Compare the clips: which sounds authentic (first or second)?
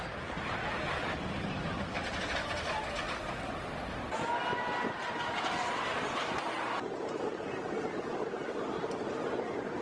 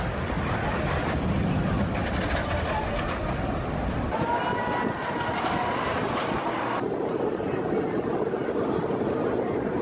first